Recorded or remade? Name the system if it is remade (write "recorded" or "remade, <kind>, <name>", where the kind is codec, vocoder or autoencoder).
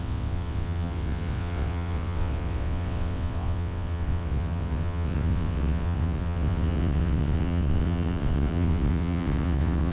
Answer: remade, vocoder, WaveNeXt